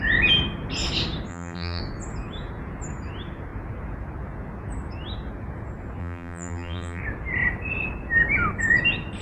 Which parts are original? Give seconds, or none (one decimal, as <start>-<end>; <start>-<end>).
0.0-1.3; 1.8-6.0; 7.0-9.2